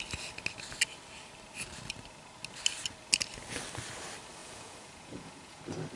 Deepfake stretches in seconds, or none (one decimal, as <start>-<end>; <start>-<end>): 4.4-5.6